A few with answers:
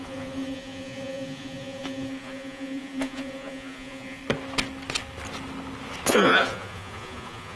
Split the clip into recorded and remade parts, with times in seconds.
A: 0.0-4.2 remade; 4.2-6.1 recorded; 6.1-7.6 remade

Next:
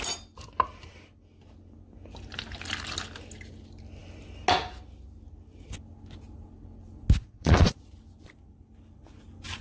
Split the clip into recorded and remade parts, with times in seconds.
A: 0.0-7.2 recorded; 7.2-7.8 remade; 7.8-9.6 recorded

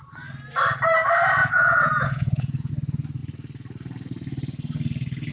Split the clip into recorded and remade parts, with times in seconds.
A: 0.0-1.4 recorded; 1.4-2.7 remade; 2.7-5.3 recorded

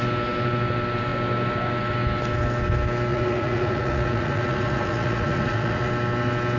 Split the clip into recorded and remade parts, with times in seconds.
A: 0.0-3.1 recorded; 3.1-5.9 remade; 5.9-6.6 recorded

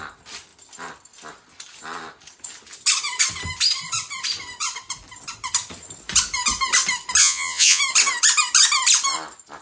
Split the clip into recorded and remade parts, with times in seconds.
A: 0.0-7.2 recorded; 7.2-7.8 remade; 7.8-9.6 recorded